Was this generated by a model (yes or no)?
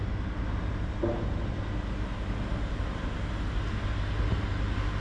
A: no